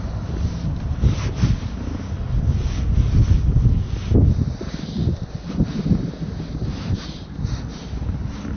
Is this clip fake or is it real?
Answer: real